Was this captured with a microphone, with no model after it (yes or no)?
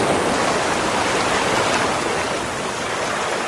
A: yes